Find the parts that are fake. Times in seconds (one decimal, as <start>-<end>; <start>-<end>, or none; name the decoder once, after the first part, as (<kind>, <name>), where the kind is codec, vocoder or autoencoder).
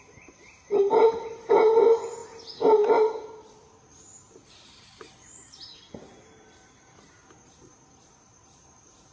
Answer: none